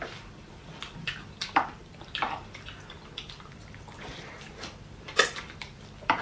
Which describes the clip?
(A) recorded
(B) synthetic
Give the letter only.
B